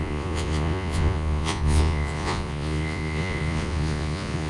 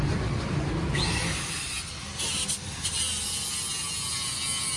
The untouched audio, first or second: second